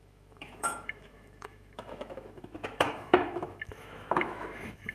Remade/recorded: remade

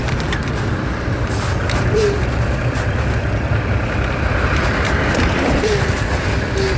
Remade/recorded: recorded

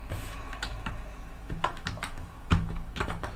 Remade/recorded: remade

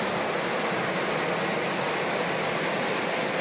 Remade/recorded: recorded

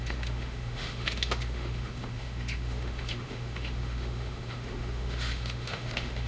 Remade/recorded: remade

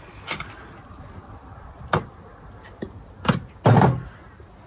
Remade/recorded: recorded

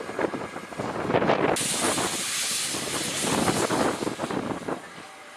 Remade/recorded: recorded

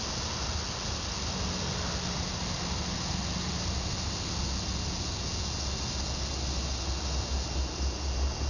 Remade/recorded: recorded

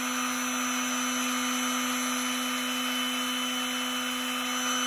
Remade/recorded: recorded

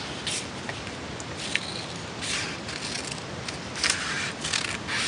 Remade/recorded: recorded